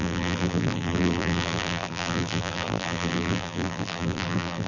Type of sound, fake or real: fake